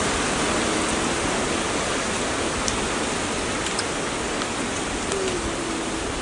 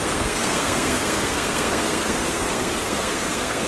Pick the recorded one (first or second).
first